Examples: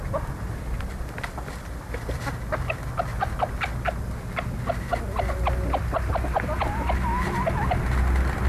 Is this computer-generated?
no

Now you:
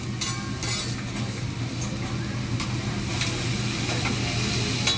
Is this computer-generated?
no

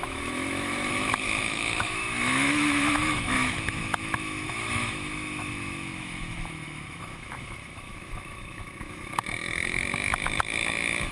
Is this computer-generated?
yes